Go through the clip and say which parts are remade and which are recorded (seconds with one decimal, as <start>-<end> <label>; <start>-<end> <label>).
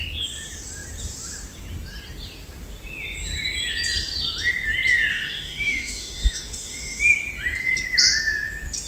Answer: 0.0-5.1 recorded; 5.1-7.0 remade; 7.0-8.9 recorded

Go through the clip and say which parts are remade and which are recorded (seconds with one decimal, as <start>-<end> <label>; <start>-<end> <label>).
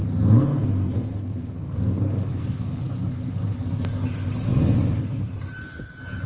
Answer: 0.0-2.8 remade; 2.8-6.3 recorded